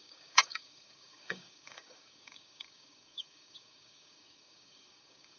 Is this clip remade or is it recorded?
remade